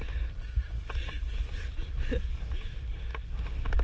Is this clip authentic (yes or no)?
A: no